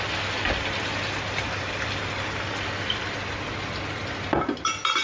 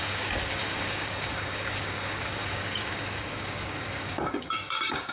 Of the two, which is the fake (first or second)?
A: second